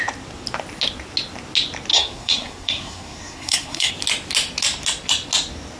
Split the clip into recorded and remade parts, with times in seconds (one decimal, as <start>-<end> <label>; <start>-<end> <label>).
0.0-1.9 recorded; 1.9-3.9 remade; 3.9-5.8 recorded